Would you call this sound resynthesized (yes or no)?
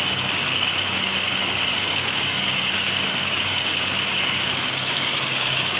yes